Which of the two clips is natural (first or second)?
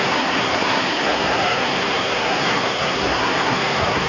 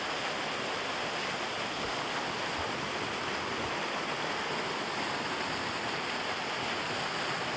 second